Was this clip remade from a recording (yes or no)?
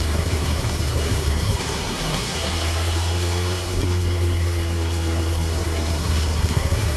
yes